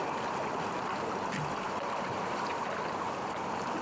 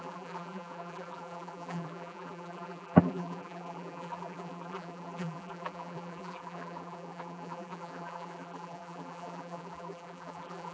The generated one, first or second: second